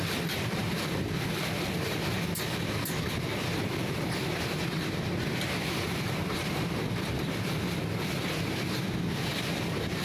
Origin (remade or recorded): remade